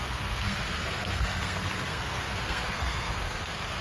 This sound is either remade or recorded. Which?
remade